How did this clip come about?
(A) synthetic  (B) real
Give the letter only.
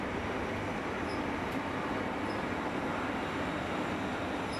B